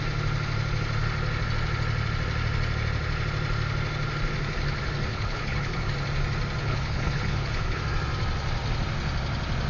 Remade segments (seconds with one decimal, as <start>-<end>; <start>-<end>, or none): 5.1-5.9; 6.6-7.8